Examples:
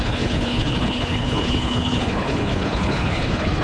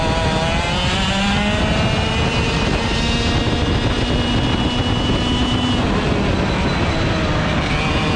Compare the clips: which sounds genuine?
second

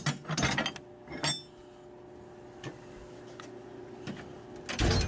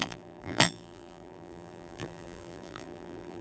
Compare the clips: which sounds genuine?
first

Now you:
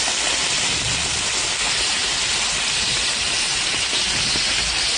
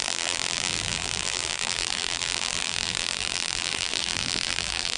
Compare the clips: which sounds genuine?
first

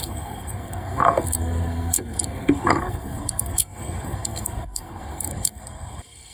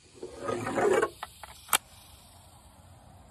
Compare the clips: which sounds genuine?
second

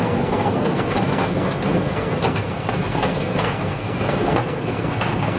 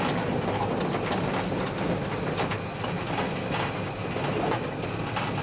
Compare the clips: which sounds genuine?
second